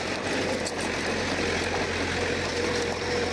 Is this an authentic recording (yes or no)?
yes